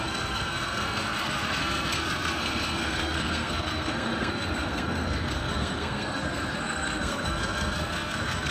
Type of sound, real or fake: fake